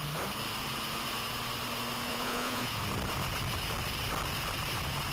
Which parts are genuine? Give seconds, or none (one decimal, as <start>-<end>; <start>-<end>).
0.0-2.1; 2.8-5.1